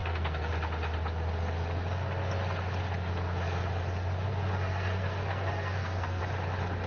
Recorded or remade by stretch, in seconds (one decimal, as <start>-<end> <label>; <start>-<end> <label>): 0.0-0.5 remade; 0.5-4.3 recorded; 4.3-6.2 remade; 6.2-6.9 recorded